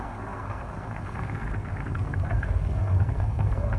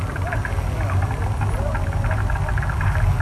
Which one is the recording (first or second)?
second